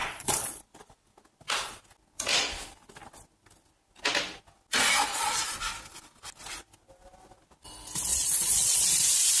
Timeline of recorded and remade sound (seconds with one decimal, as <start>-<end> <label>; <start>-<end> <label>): 0.0-0.6 remade; 0.6-5.1 recorded; 5.1-5.6 remade; 5.6-8.1 recorded; 8.1-8.8 remade; 8.8-9.4 recorded